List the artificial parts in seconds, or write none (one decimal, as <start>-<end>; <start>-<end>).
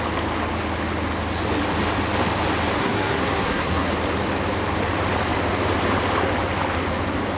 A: 2.8-3.9